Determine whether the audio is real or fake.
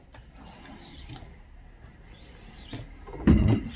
real